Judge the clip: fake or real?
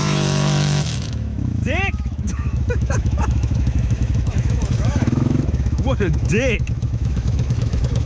fake